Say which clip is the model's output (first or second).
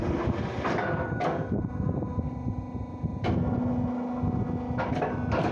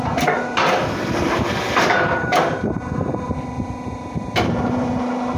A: second